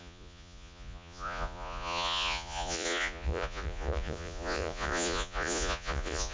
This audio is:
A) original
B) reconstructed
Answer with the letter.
B